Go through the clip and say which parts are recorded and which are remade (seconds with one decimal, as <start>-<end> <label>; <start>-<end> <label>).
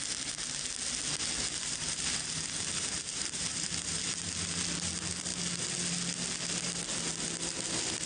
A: 0.0-1.6 recorded; 1.6-4.0 remade; 4.0-8.1 recorded